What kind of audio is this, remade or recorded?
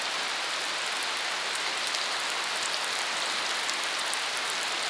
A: recorded